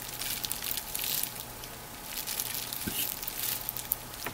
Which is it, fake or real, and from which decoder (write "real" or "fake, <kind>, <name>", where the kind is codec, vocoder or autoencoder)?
real